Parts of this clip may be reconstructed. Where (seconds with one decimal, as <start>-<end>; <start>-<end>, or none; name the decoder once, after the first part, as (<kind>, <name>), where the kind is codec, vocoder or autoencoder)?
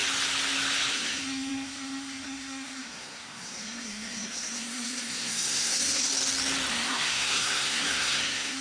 0.9-6.1 (codec, SNAC); 6.7-8.6